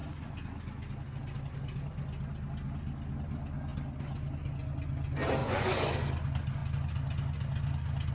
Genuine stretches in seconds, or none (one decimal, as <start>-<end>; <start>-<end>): 0.0-5.4; 5.9-8.1